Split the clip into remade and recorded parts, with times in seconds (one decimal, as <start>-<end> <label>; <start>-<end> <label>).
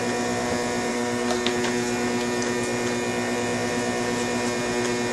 0.0-0.9 recorded; 0.9-1.5 remade; 1.5-5.1 recorded